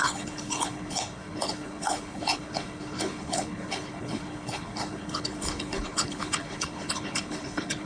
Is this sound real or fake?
fake